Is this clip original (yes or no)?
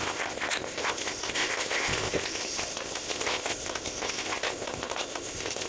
no